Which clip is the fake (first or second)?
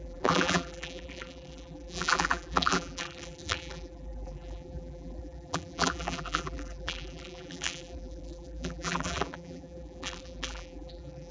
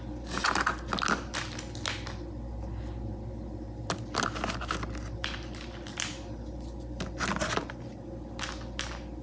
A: first